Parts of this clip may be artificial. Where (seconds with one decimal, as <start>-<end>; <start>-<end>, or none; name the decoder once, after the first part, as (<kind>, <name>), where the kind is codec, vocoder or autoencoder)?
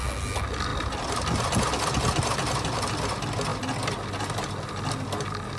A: none